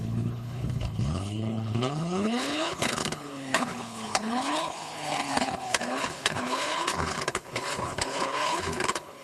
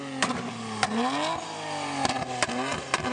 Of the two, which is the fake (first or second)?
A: first